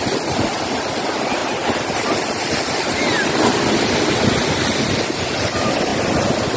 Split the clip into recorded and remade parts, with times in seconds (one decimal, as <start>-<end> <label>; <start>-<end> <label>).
0.0-6.6 remade